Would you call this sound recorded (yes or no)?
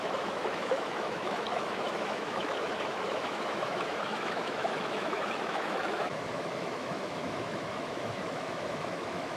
no